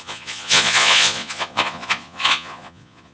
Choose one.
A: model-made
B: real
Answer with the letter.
A